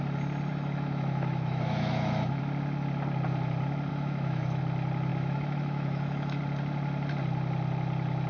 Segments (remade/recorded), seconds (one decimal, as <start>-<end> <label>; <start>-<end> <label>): 0.0-0.5 recorded; 0.5-2.4 remade; 2.4-3.9 recorded; 3.9-4.6 remade; 4.6-5.1 recorded; 5.1-6.4 remade; 6.4-8.3 recorded

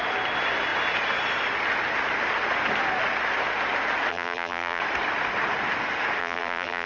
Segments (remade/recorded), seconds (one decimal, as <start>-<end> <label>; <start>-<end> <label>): 0.0-4.1 recorded; 4.1-4.8 remade; 4.8-6.2 recorded; 6.2-6.9 remade

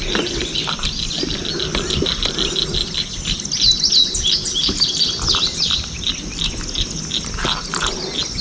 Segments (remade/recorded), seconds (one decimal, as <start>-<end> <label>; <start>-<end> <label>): 0.0-8.4 recorded